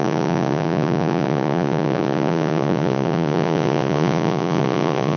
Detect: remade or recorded remade